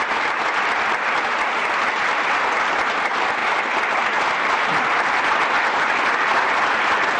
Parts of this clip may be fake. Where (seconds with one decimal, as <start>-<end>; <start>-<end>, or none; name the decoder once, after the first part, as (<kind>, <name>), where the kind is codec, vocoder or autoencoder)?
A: none